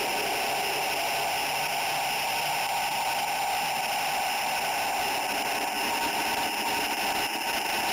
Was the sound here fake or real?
real